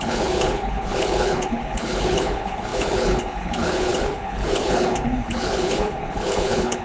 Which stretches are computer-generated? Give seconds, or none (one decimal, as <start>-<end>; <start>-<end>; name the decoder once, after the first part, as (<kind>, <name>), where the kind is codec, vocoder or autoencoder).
0.0-6.8 (codec, HILCodec)